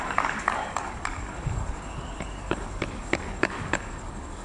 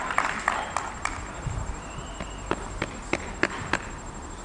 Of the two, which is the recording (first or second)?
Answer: second